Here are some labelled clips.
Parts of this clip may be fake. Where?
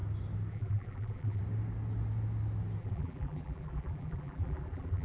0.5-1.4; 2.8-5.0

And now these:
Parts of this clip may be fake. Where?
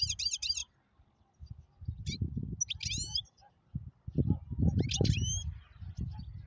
none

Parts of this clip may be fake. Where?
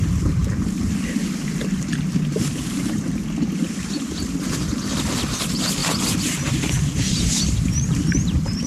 2.3-3.2; 5.8-8.7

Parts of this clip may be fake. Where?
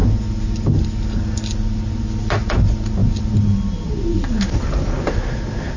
none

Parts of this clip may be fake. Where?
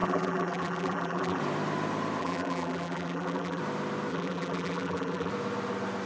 0.0-1.4; 2.2-3.6; 4.1-5.3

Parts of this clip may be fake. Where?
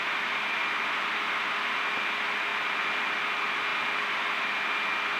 2.5-3.3; 3.7-4.4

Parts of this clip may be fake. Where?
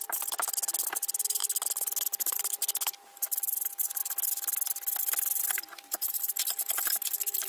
0.0-1.4; 3.4-4.0; 5.5-7.5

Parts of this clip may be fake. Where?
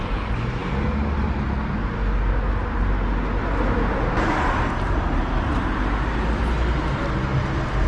none